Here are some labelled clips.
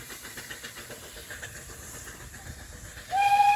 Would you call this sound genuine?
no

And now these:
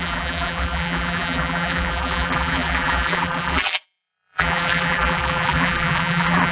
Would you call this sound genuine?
no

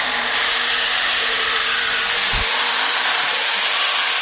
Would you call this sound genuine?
no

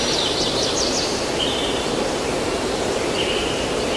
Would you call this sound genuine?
no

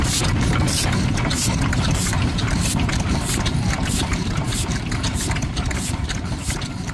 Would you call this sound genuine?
no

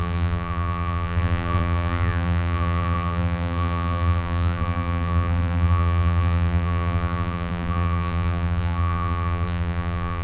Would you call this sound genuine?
no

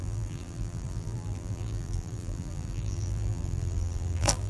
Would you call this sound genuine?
no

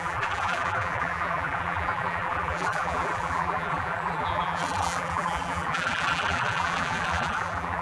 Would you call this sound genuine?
no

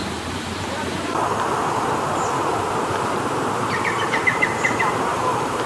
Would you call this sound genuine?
no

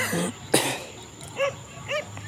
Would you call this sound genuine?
yes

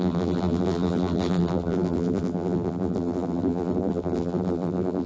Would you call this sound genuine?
no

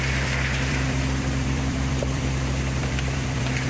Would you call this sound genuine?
no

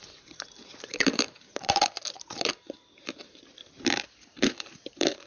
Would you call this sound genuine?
no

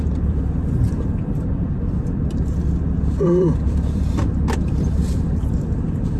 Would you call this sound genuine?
no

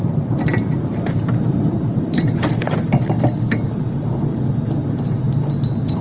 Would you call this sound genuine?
no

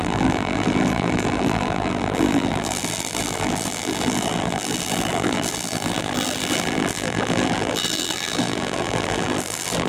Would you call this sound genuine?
no